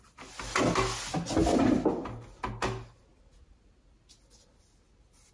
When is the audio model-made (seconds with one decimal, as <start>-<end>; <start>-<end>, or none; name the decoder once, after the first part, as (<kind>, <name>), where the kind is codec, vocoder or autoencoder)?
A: none